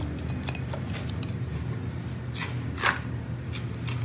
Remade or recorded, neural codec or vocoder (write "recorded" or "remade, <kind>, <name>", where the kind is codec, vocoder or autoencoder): recorded